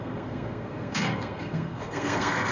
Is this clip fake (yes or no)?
yes